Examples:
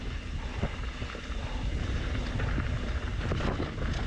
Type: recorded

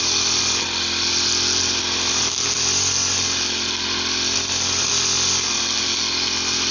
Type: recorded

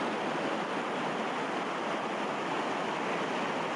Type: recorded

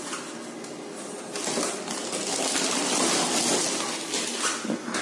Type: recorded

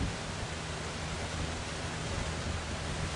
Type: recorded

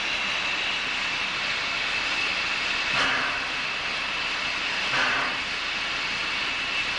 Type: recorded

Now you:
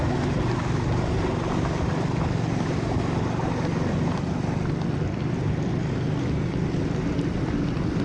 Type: recorded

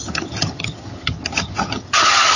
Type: remade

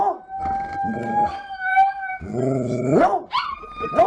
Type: recorded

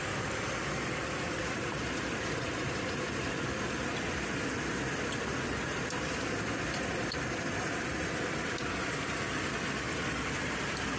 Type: remade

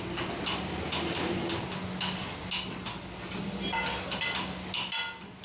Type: recorded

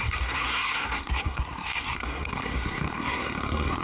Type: remade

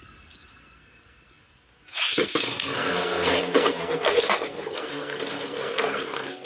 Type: remade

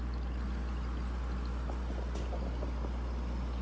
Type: recorded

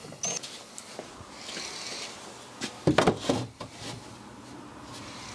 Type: recorded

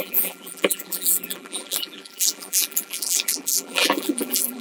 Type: remade